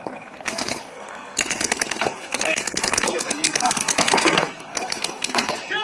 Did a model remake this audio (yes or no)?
yes